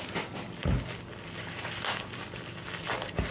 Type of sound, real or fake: real